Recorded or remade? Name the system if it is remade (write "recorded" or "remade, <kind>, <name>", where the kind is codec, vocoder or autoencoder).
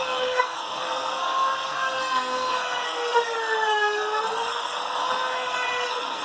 remade, codec, SNAC